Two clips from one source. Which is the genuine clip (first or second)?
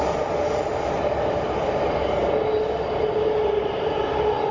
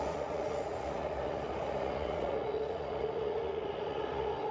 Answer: first